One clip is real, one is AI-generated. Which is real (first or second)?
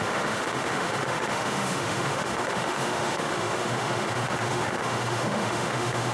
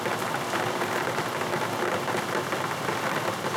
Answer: second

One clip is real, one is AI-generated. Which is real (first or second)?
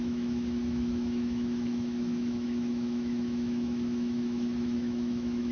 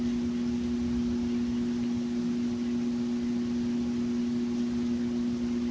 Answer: second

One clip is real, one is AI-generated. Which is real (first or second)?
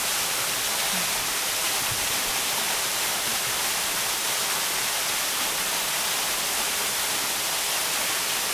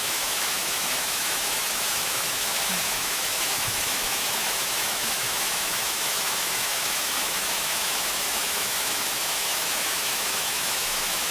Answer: first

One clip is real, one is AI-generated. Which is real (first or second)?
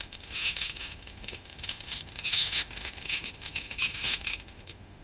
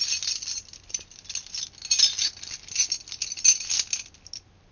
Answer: second